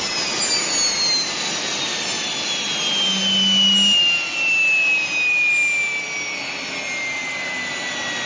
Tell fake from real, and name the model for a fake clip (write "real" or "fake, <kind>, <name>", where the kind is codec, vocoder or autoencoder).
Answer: real